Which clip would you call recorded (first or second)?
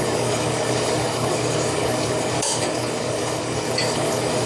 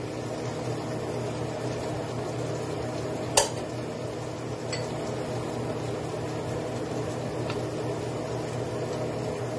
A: second